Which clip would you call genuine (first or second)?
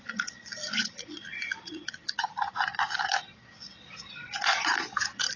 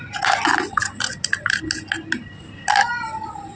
second